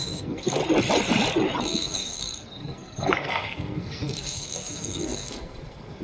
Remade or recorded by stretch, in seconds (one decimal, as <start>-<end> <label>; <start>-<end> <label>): 0.0-0.6 remade; 0.6-1.6 recorded; 1.6-6.0 remade